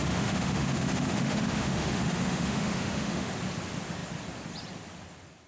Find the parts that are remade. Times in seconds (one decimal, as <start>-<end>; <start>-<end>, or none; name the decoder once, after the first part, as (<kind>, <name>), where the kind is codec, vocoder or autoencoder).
0.0-3.3 (autoencoder, DAC-VAE)